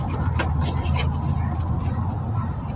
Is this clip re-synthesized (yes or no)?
yes